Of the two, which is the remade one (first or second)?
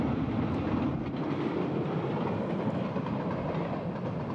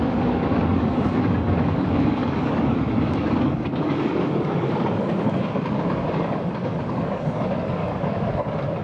second